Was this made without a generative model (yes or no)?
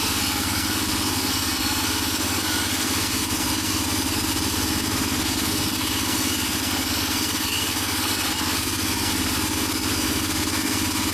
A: no